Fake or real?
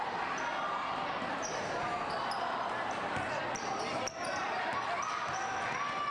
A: real